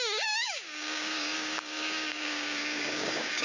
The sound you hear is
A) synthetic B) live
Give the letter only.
A